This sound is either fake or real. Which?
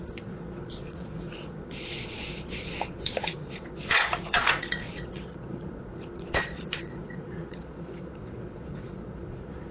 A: fake